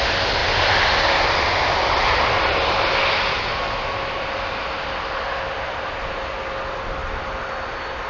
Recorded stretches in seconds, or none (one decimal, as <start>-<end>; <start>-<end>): 0.0-8.1